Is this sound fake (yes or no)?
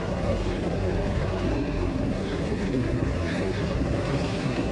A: yes